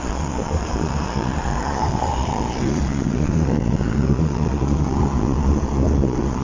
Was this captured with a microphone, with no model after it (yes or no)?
no